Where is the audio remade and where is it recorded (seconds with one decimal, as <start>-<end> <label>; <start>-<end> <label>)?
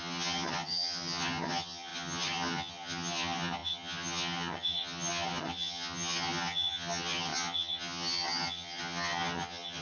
0.0-9.8 remade